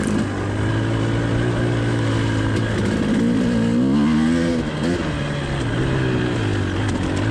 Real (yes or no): yes